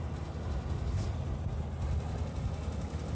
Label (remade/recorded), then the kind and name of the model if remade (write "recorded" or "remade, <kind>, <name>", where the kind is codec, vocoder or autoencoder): recorded